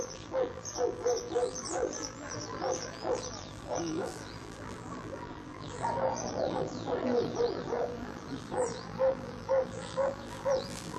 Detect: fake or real fake